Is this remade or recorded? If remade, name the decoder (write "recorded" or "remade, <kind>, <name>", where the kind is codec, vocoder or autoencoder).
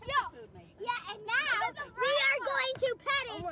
recorded